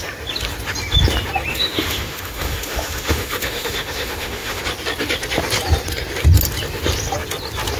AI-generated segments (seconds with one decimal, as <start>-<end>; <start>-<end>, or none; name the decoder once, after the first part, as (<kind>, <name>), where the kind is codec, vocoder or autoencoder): 1.5-4.6 (autoencoder, DAC-VAE)